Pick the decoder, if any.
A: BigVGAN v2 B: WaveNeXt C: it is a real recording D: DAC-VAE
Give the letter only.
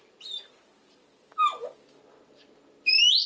C